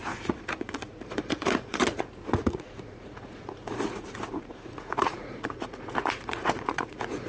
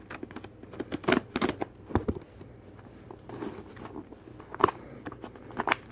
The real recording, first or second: second